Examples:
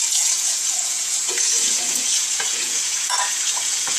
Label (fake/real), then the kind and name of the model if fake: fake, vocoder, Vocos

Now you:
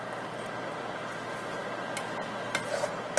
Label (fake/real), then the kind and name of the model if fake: real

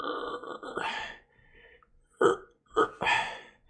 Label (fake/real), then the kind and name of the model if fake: fake, vocoder, Vocos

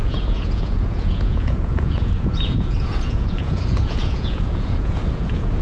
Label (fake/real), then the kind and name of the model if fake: fake, vocoder, Vocos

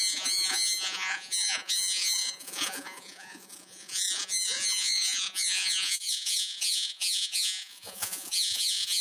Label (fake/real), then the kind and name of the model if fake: fake, vocoder, Vocos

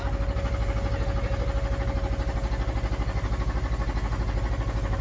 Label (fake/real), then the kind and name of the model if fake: real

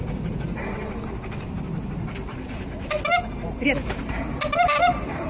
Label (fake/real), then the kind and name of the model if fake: real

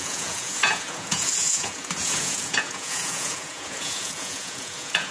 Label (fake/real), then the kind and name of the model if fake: fake, vocoder, Vocos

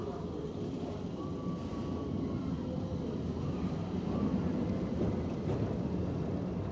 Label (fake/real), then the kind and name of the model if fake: real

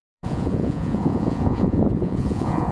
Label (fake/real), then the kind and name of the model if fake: fake, vocoder, Vocos